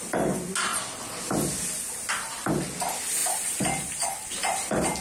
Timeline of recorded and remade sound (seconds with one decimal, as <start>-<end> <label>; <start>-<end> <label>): 0.0-3.2 recorded; 3.2-3.9 remade; 3.9-5.0 recorded